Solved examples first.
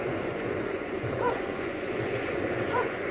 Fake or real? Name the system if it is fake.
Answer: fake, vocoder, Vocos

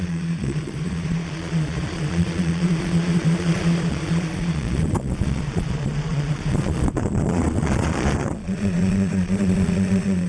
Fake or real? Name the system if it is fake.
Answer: fake, vocoder, Vocos